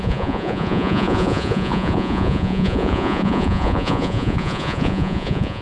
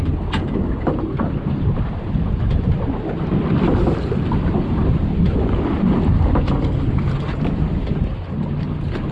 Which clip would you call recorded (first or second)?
second